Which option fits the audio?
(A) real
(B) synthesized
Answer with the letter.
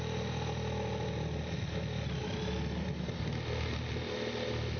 A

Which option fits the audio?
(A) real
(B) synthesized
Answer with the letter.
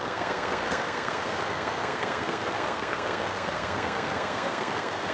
B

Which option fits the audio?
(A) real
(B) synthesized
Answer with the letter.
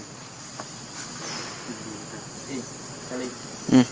A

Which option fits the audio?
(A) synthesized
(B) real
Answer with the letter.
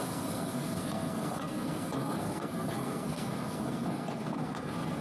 A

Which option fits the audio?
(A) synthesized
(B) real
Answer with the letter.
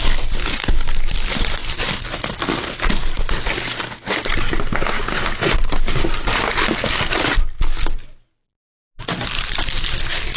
B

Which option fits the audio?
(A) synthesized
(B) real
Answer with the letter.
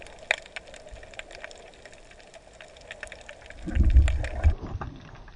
B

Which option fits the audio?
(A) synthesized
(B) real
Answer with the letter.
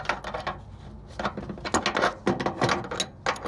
B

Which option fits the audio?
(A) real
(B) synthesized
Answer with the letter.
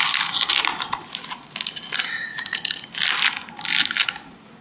A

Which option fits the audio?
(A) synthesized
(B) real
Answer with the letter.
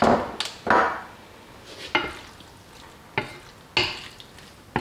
B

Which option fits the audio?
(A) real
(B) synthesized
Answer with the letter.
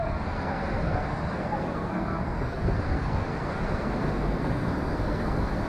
B